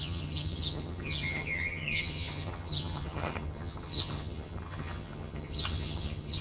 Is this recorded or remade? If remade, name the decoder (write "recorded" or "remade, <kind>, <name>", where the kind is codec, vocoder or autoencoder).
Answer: remade, vocoder, HiFi-GAN